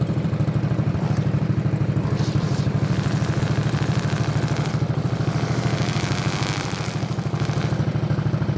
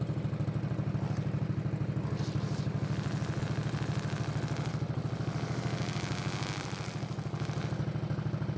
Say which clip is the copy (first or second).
first